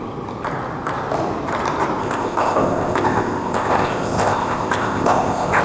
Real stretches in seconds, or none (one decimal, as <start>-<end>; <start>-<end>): 0.0-2.0